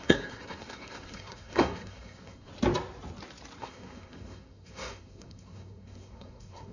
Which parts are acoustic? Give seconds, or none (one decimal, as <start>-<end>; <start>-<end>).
2.5-3.6